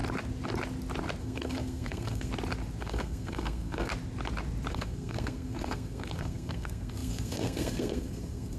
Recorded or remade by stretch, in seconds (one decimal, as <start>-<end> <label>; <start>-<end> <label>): 0.0-1.2 recorded; 1.2-2.3 remade; 2.3-2.8 recorded; 2.8-3.9 remade; 3.9-4.7 recorded; 4.7-8.6 remade